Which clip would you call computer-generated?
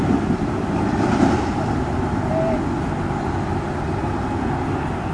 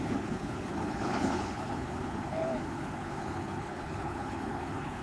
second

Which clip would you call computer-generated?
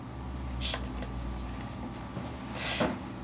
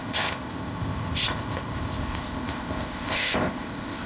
second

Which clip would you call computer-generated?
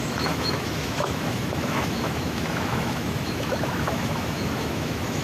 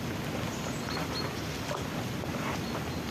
first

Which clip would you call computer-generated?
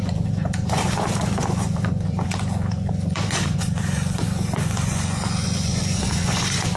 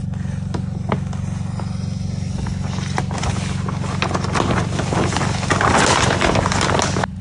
first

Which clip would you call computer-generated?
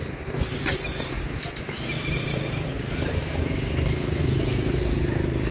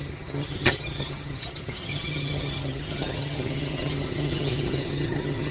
second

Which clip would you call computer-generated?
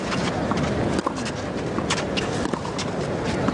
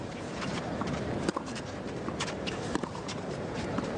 second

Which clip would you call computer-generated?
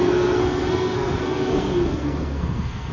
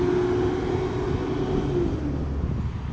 first